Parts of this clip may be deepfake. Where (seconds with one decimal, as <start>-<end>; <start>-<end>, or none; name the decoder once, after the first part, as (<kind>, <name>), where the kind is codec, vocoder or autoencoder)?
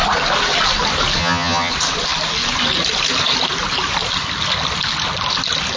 1.2-1.7 (vocoder, HiFi-GAN)